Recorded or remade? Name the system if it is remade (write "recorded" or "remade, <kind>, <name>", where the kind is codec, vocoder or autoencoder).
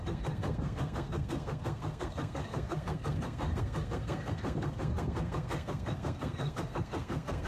remade, codec, SNAC